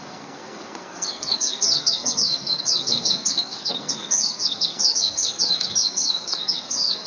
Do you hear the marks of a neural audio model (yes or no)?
yes